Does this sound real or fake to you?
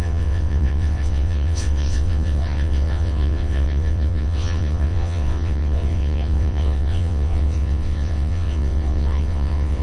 fake